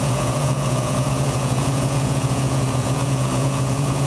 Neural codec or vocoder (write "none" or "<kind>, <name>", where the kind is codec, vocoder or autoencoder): vocoder, Vocos